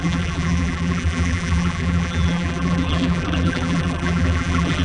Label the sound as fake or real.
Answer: fake